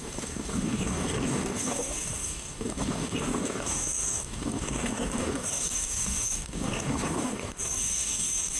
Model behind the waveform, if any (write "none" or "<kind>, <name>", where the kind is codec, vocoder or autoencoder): codec, DAC